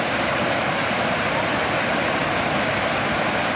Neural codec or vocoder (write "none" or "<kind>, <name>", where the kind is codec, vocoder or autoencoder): none